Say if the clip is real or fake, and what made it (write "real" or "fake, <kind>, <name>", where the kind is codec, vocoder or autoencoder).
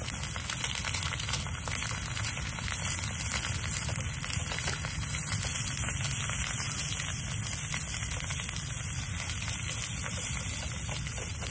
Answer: real